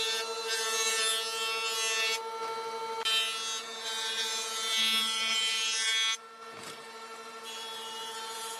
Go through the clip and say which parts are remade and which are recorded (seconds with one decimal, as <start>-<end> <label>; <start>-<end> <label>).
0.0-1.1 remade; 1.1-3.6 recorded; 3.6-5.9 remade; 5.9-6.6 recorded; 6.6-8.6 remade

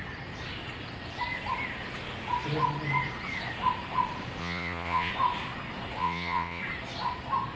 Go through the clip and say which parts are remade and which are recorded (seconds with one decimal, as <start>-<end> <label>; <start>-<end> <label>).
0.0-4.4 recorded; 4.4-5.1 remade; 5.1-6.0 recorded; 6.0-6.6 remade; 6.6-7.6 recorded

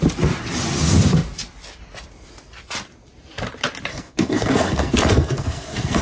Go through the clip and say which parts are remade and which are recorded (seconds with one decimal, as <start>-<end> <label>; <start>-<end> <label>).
0.0-3.9 recorded; 3.9-6.0 remade